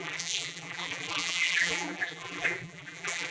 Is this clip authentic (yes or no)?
no